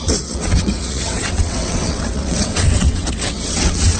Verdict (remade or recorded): remade